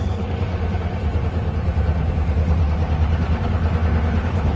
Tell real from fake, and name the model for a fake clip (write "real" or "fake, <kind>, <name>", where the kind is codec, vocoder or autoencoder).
fake, vocoder, BigVGAN v2